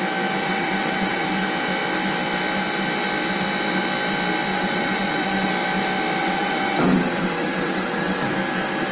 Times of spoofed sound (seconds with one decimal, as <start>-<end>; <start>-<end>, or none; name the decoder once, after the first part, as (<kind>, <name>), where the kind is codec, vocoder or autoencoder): 0.4-1.3 (vocoder, WaveNeXt); 4.5-5.5; 6.2-8.3